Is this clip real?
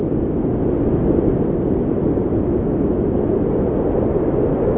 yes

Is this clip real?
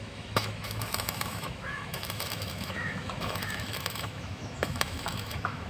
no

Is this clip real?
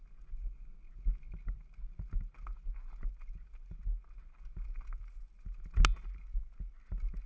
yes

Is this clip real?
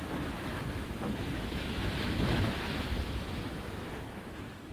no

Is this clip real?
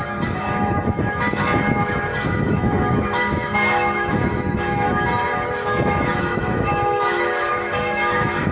no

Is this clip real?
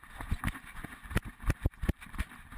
yes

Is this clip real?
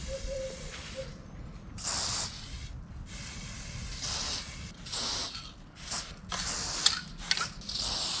yes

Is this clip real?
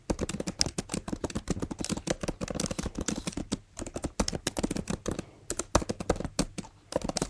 yes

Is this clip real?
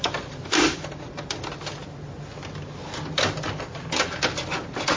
yes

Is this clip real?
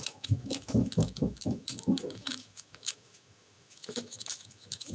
no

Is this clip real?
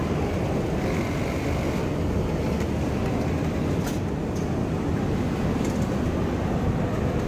yes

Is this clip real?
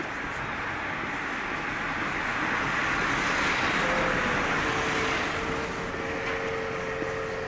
yes